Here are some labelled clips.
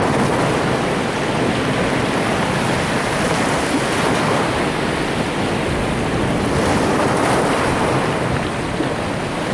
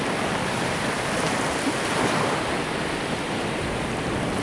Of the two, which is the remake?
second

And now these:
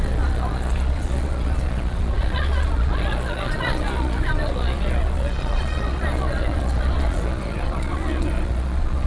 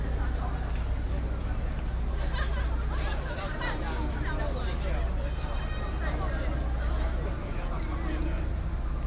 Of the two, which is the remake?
first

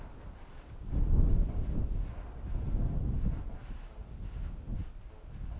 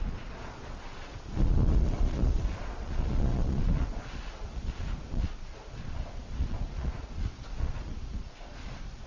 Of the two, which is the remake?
second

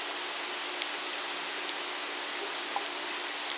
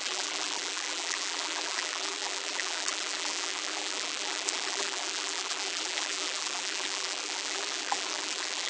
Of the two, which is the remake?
second